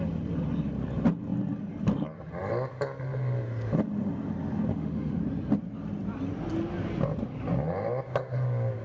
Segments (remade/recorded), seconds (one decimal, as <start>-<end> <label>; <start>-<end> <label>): 0.0-4.7 recorded; 4.7-5.2 remade; 5.2-8.8 recorded